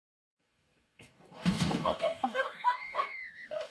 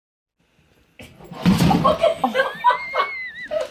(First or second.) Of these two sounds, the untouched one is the second